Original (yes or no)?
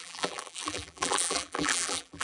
no